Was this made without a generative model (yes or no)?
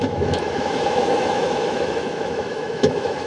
no